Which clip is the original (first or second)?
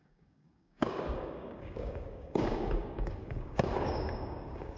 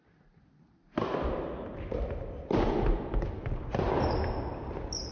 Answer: second